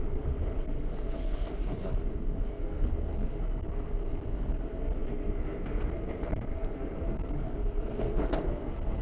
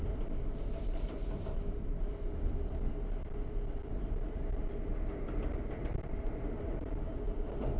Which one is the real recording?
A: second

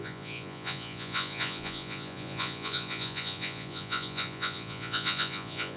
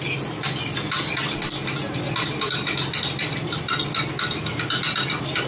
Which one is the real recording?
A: second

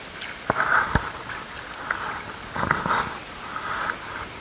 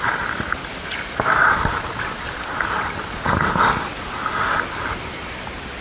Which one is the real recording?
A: first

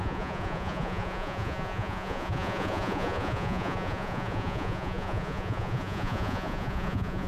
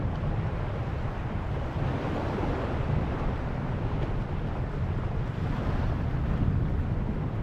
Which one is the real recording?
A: second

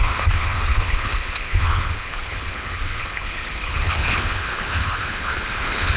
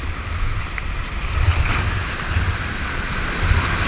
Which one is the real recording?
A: second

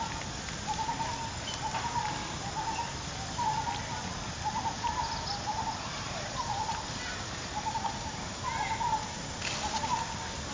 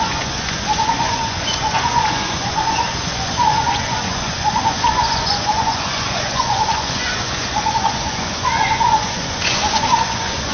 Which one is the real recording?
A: first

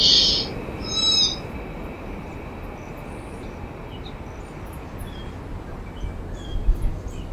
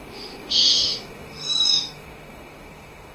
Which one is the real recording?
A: first